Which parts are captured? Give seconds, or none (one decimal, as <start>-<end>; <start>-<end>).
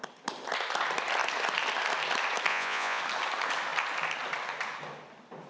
0.0-2.5; 3.0-5.5